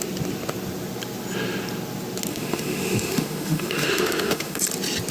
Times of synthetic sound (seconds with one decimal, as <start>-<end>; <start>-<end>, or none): 2.3-4.6